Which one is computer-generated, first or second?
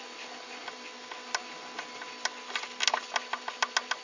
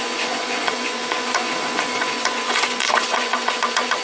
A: second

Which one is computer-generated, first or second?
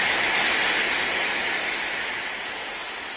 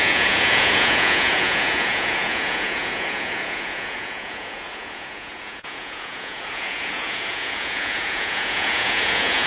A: second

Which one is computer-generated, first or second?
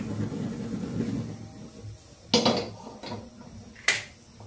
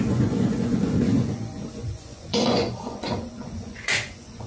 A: second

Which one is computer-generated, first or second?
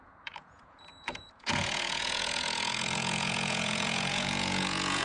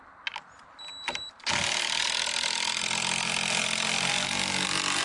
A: first